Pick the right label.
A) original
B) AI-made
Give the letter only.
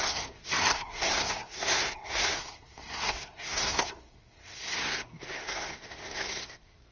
B